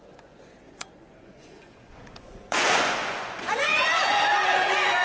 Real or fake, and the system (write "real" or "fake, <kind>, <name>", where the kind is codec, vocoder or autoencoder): fake, vocoder, Vocos